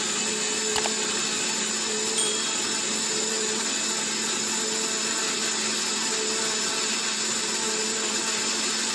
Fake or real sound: real